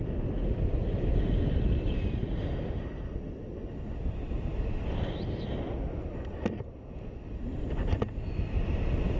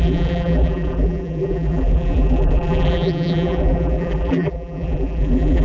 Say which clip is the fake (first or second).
second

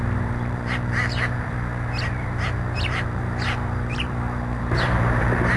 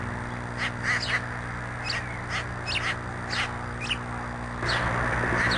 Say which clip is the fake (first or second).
first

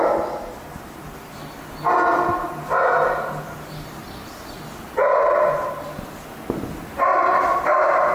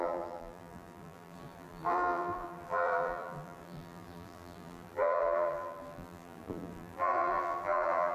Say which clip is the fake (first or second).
second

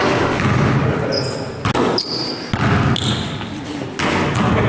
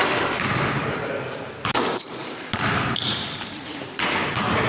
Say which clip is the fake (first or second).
second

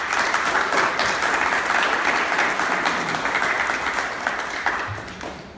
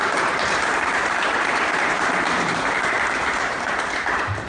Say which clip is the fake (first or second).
second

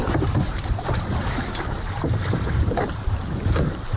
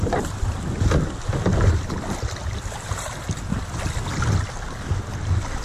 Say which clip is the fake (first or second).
first